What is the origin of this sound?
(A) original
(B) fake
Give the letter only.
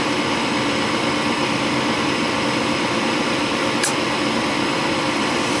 B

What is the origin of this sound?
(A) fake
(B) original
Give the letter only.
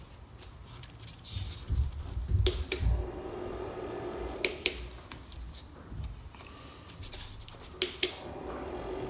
B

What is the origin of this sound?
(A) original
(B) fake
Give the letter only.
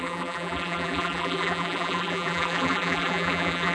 B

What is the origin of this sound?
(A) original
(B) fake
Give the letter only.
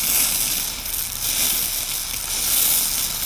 A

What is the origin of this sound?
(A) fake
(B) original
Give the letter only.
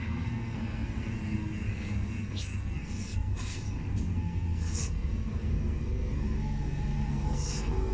A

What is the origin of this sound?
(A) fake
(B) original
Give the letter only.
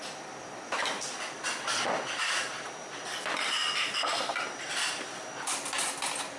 B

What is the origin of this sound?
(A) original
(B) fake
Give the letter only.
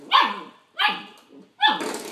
B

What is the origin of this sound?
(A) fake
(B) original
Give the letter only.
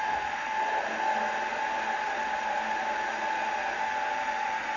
B